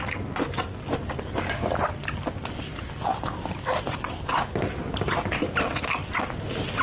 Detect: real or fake real